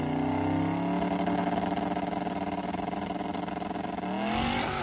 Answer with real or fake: real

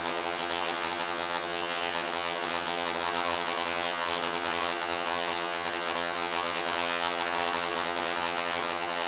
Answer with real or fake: fake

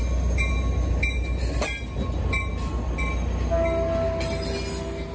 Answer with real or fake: real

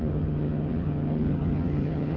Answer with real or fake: fake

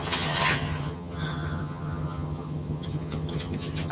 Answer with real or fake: fake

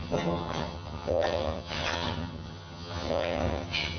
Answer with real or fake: fake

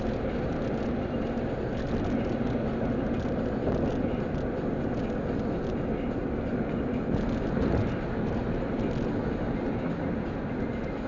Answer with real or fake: real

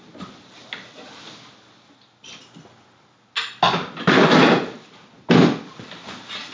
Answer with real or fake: real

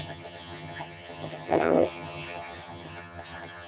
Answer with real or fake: fake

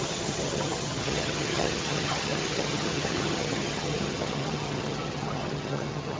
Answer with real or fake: fake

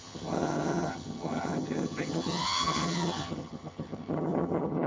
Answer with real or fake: fake